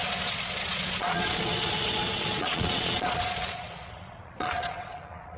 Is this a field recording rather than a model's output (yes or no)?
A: no